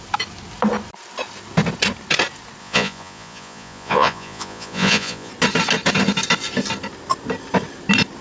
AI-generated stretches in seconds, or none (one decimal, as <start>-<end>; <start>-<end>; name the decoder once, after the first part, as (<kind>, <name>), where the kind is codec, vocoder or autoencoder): 2.6-5.3 (vocoder, Vocos)